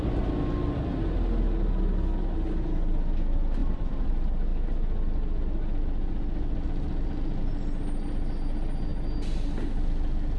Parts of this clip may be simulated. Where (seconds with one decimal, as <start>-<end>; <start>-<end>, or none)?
3.6-4.1